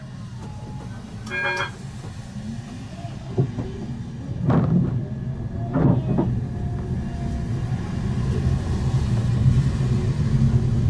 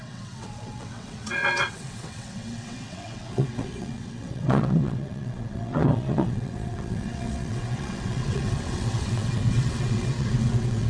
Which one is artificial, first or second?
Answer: second